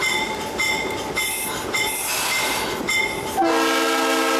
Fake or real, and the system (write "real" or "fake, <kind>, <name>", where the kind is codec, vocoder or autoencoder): real